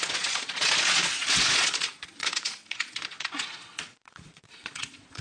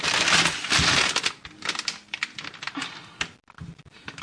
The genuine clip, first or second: second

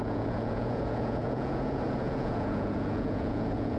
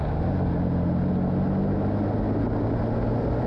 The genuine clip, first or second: second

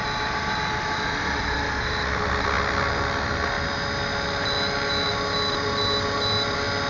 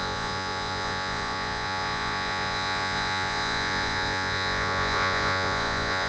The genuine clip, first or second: first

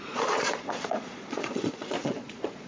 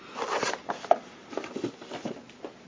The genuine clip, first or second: second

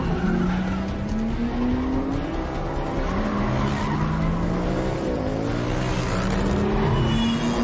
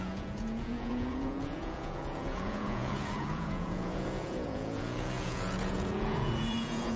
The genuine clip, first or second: first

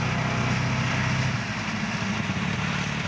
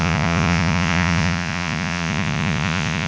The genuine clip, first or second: first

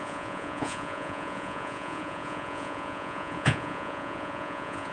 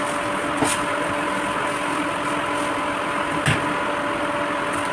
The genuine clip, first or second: second